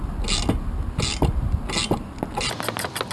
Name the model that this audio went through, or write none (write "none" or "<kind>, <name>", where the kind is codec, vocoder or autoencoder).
none